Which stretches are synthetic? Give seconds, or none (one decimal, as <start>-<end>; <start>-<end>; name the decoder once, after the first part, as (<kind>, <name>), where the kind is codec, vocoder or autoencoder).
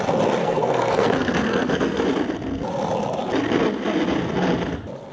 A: 0.4-2.0 (codec, SNAC)